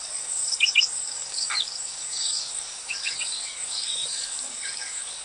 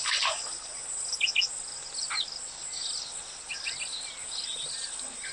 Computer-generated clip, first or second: first